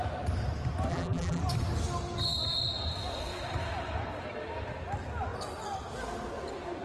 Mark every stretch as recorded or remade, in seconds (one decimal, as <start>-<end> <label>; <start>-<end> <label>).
0.0-0.9 recorded; 0.9-1.4 remade; 1.4-6.8 recorded